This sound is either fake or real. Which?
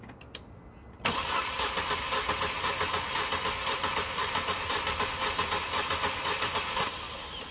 real